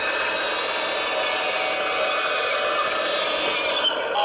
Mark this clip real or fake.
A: real